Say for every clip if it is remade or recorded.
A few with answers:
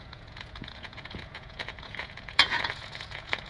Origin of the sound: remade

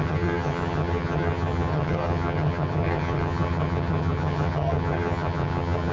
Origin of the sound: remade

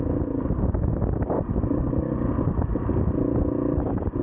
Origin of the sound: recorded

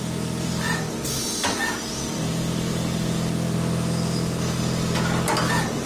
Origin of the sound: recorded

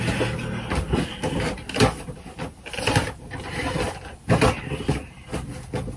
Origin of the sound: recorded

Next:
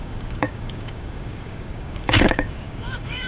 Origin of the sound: remade